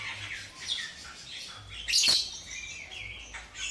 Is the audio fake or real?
real